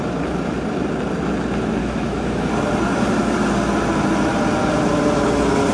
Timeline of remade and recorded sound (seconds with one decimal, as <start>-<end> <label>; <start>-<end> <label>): 0.0-1.8 recorded; 1.8-2.5 remade; 2.5-5.7 recorded